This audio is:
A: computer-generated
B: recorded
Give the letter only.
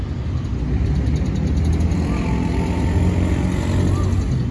B